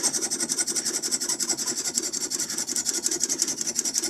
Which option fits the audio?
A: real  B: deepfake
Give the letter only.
A